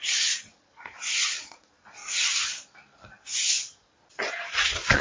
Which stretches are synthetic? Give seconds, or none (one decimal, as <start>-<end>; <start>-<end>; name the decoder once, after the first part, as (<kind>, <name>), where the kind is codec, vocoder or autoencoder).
0.0-2.0 (vocoder, Vocos); 4.2-5.0